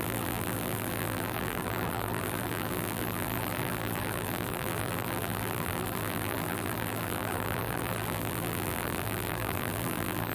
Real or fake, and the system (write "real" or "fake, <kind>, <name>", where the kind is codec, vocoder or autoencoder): fake, vocoder, BigVGAN v2